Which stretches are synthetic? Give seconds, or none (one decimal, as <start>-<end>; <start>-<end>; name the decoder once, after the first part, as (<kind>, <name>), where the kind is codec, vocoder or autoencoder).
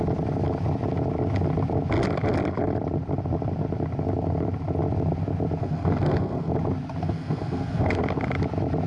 5.6-6.5 (codec, SNAC); 7.0-8.0